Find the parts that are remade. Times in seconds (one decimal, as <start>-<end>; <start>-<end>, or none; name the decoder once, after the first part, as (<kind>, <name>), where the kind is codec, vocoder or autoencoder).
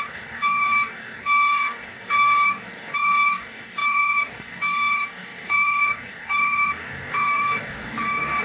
0.0-8.4 (codec, DAC)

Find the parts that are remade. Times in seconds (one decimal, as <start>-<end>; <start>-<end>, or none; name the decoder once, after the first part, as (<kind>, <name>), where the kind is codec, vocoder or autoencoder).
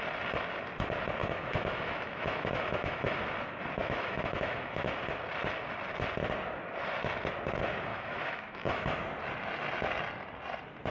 1.2-3.2 (autoencoder, DAC-VAE); 3.8-4.9; 7.9-9.0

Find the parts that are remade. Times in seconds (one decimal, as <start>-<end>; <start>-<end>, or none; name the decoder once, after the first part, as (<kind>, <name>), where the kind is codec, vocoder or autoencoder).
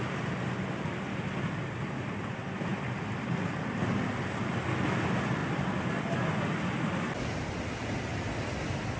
none